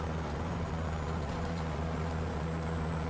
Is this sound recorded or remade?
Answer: remade